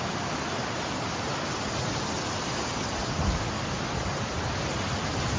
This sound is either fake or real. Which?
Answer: real